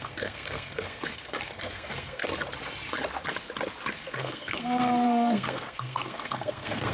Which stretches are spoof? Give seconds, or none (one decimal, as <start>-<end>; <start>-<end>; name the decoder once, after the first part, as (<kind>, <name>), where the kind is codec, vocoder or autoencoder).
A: 0.0-2.3 (codec, SNAC); 3.9-6.9